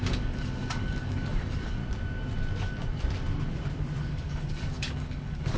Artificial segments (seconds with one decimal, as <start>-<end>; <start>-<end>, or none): 0.0-1.8; 4.0-5.6